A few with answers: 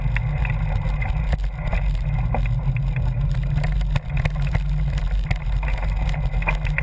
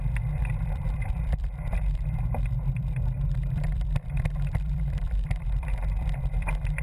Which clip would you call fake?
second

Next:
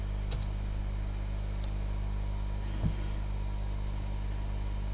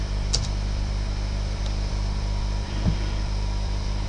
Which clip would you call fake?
second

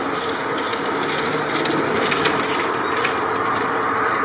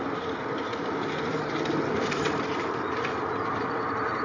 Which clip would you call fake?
second